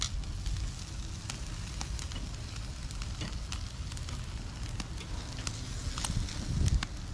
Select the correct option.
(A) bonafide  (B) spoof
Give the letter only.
A